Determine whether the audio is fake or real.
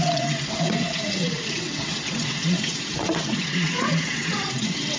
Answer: fake